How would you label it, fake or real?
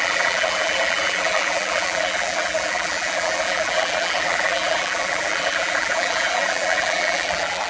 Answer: fake